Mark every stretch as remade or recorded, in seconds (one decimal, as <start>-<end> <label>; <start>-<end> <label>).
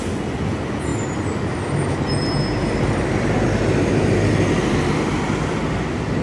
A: 0.0-6.2 recorded